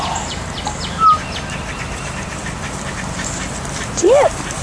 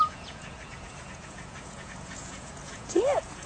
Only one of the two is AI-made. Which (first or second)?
second